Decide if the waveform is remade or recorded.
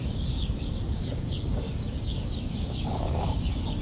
remade